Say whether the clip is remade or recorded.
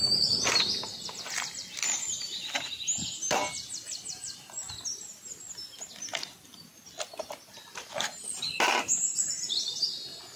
recorded